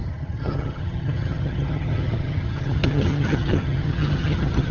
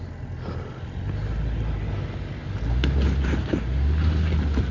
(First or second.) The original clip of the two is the second